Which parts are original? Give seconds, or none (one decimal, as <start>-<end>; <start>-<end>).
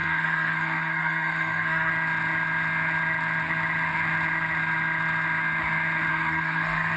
1.9-6.1